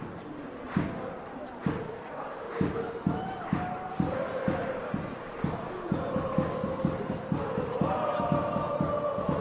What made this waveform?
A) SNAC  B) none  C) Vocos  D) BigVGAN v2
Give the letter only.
B